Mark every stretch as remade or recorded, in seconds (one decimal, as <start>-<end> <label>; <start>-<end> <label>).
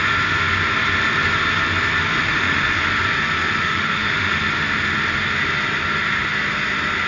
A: 0.0-2.2 recorded; 2.2-2.8 remade; 2.8-3.6 recorded; 3.6-4.4 remade; 4.4-7.1 recorded